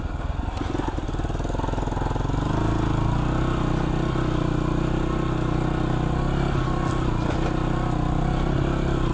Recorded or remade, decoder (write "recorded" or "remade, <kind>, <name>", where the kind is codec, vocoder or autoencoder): recorded